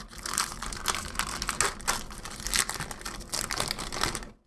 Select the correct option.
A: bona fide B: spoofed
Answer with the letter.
A